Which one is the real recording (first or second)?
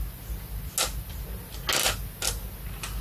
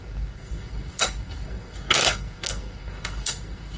first